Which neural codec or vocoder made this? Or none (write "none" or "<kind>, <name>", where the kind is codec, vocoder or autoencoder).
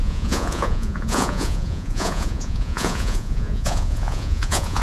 vocoder, Vocos